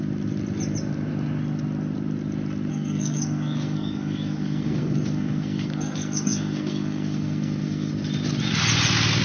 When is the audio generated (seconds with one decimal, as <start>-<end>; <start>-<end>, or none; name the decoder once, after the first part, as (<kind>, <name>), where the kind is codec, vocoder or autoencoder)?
2.7-7.9 (codec, SNAC)